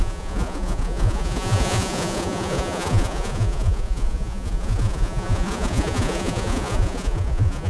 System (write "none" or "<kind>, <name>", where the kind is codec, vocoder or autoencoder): vocoder, Vocos